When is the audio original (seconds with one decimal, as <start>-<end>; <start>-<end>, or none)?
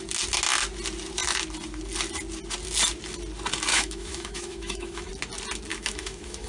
0.0-3.7; 5.1-5.7